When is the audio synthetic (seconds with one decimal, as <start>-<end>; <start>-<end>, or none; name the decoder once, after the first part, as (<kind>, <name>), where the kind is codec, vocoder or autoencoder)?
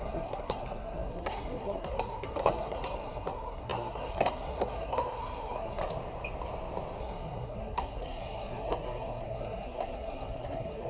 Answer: 0.0-5.8 (codec, SNAC); 7.0-10.9